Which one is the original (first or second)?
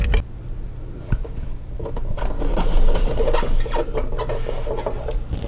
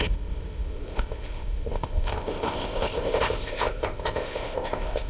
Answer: first